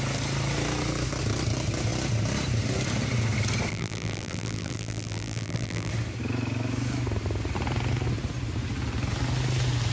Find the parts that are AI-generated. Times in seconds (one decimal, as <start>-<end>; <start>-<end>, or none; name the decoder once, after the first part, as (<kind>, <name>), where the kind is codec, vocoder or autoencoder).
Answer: 3.7-5.9 (vocoder, BigVGAN v2)